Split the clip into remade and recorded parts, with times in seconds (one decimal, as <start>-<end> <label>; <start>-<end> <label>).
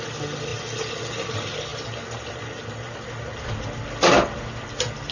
0.0-5.1 recorded